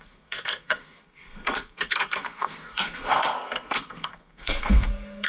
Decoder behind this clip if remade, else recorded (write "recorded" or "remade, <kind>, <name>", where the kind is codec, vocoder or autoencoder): remade, codec, SNAC